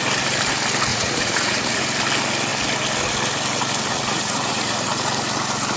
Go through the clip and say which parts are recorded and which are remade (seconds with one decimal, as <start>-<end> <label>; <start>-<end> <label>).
0.0-0.9 recorded; 0.9-1.8 remade; 1.8-3.9 recorded; 3.9-4.9 remade; 4.9-5.8 recorded